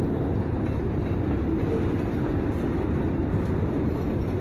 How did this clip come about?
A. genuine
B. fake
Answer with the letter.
A